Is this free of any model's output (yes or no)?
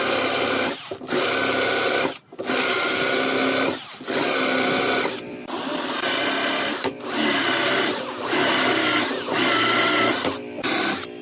yes